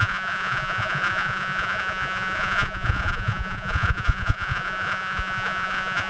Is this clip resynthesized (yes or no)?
yes